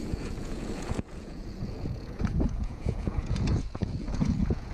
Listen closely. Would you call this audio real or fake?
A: fake